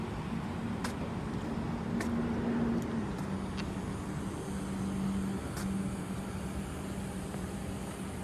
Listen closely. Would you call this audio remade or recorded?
recorded